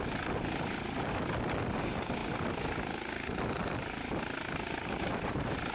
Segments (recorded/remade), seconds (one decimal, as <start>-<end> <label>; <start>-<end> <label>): 0.0-5.7 recorded